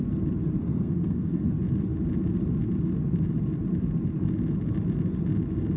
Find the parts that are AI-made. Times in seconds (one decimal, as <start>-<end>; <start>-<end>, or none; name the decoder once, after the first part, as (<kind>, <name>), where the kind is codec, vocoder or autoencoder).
0.6-1.5 (codec, SNAC)